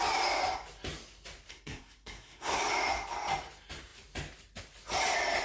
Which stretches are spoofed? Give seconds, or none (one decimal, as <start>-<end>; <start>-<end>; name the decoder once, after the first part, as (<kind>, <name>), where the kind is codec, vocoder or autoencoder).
1.5-2.6 (codec, SNAC)